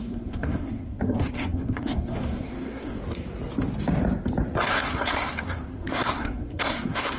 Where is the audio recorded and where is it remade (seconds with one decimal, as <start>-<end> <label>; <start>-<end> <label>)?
0.0-3.0 remade; 3.0-4.7 recorded; 4.7-7.2 remade

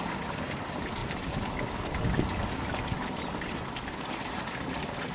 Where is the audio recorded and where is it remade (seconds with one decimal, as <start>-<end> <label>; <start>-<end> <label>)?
0.0-5.1 recorded